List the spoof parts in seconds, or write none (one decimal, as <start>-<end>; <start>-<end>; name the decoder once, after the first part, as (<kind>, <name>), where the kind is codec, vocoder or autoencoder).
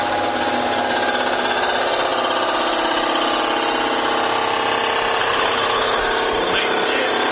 5.2-6.0 (codec, HILCodec)